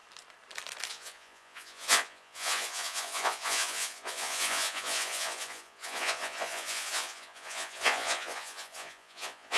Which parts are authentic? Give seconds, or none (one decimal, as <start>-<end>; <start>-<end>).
0.0-0.9